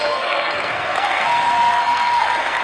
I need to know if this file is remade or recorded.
remade